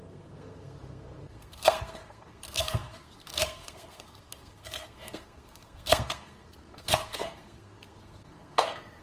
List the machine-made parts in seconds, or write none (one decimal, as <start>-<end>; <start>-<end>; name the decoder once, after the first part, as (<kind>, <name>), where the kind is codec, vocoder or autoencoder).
0.0-9.0 (codec, SNAC)